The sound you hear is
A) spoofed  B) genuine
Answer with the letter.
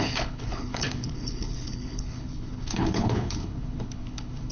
A